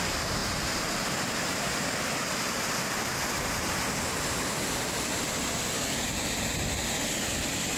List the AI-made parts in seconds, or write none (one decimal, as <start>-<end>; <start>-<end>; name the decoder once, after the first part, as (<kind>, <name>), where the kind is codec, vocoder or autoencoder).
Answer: 0.4-1.6 (vocoder, BigVGAN v2)